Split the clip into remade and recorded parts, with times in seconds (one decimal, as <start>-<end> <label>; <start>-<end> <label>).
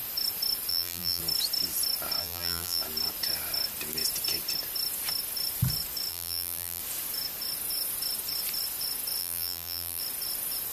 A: 0.0-0.7 recorded; 0.7-1.2 remade; 1.2-2.2 recorded; 2.2-2.8 remade; 2.8-6.1 recorded; 6.1-6.8 remade; 6.8-9.2 recorded; 9.2-10.0 remade; 10.0-10.7 recorded